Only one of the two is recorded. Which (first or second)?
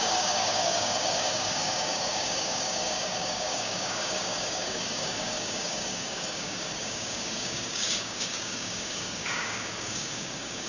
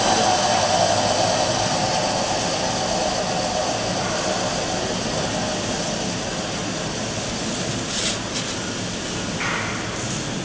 second